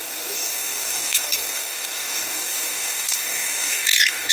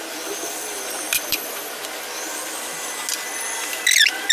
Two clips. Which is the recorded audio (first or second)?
second